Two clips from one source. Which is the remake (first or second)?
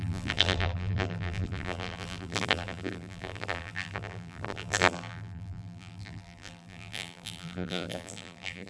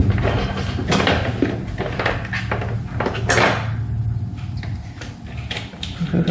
first